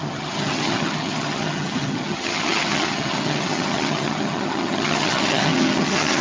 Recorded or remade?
remade